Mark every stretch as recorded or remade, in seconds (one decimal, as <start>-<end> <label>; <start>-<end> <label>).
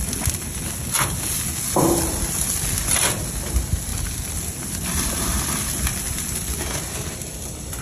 0.0-7.8 recorded